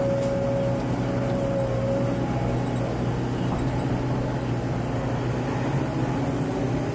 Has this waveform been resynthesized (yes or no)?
no